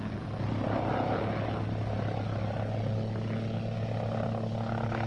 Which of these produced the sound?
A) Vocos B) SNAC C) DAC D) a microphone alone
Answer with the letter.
D